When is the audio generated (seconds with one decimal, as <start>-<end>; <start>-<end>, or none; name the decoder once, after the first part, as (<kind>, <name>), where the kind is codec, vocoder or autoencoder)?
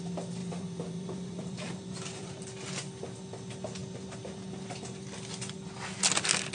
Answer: 0.4-2.4 (vocoder, BigVGAN v2)